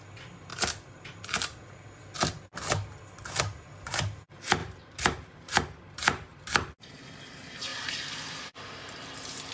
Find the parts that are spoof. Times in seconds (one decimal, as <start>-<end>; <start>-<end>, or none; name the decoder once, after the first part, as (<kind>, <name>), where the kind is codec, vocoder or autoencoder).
4.6-7.0 (vocoder, BigVGAN v2)